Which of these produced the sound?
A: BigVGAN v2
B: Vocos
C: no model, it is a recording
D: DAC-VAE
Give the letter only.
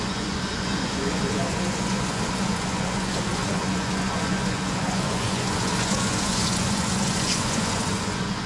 B